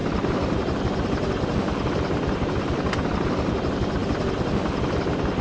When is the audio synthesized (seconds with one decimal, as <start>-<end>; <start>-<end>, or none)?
none